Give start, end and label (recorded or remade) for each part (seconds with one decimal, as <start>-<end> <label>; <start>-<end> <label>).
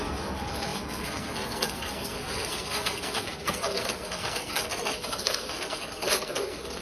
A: 0.0-6.8 remade